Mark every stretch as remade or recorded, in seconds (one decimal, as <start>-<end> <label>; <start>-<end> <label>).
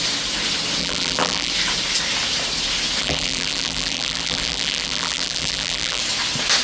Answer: 0.0-0.8 recorded; 0.8-1.5 remade; 1.5-3.0 recorded; 3.0-6.0 remade; 6.0-6.6 recorded